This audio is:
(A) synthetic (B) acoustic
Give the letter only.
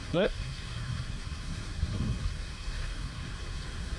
A